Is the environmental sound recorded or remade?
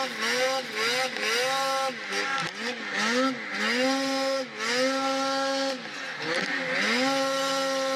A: recorded